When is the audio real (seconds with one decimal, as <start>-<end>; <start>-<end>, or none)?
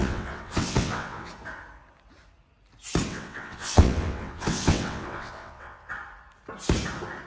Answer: 1.3-3.1; 5.9-7.3